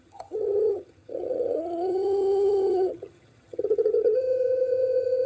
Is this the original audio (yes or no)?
no